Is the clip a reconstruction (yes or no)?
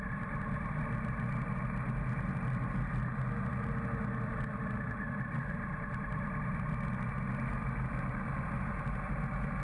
no